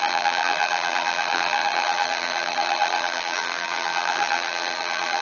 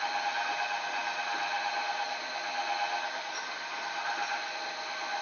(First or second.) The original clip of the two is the second